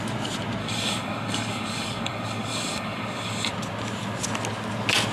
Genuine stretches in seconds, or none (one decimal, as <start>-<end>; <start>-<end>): 0.0-0.6; 3.5-5.1